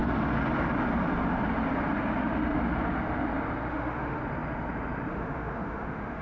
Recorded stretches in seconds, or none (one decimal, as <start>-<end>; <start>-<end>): 0.0-3.7; 4.2-5.1